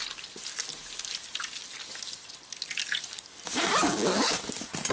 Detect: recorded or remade recorded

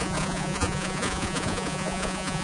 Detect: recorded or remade remade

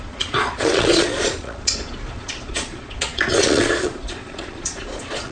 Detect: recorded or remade remade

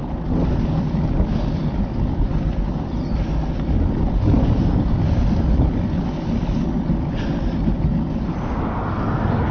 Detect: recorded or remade recorded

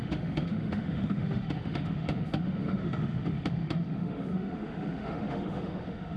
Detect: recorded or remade remade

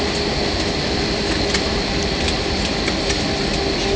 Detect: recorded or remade recorded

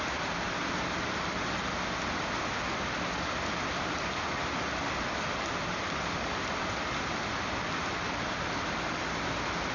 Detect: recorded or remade recorded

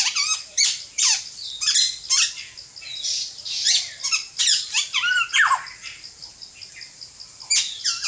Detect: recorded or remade recorded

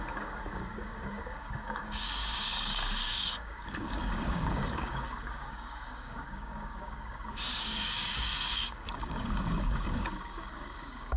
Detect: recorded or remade remade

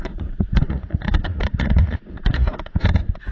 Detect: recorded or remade remade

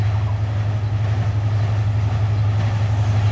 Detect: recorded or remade recorded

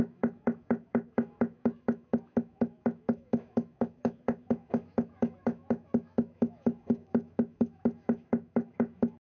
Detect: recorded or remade remade